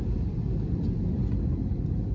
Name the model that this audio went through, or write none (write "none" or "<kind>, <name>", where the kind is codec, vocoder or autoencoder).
none